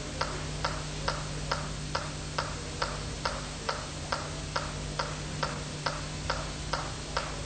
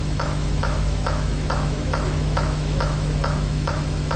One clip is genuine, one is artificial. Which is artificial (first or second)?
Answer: second